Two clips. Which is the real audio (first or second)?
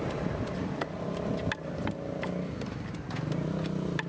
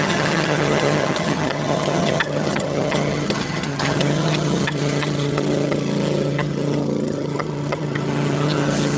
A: first